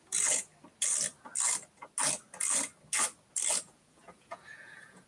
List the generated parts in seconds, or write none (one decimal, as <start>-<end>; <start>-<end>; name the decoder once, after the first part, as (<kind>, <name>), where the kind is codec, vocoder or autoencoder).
0.0-0.5 (vocoder, Vocos); 3.6-5.1